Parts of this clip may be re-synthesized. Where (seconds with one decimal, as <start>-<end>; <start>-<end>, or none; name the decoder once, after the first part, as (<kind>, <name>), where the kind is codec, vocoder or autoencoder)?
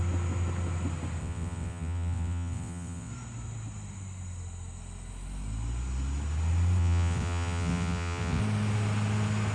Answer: 1.2-3.1 (vocoder, WaveNeXt); 6.8-8.4